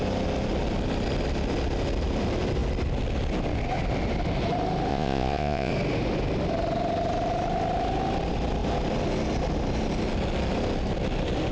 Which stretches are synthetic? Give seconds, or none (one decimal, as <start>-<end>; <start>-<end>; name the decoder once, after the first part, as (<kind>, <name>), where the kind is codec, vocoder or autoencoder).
4.9-5.7 (vocoder, Vocos)